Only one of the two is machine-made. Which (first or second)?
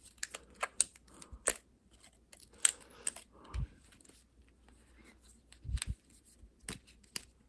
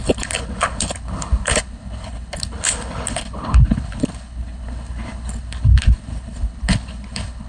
second